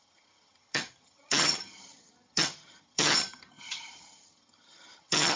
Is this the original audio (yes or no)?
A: no